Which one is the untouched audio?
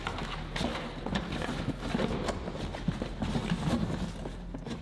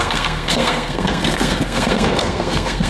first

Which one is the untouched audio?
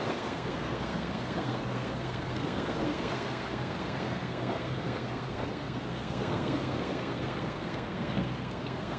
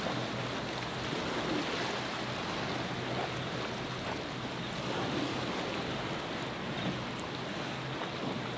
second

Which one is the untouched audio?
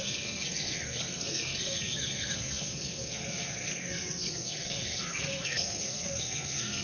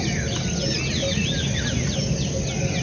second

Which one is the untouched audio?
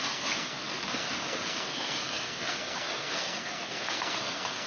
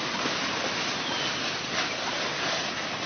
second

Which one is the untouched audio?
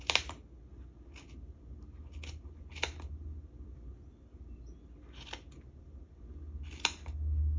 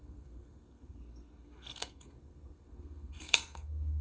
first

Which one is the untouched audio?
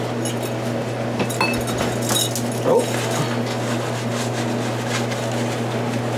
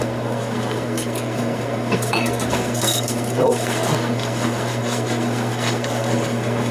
first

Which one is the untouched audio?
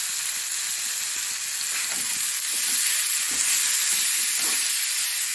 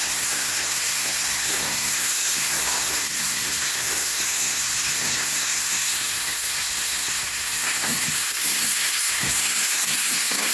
first